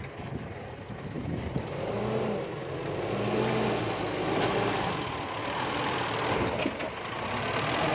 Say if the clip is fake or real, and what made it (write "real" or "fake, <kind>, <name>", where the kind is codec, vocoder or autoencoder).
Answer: real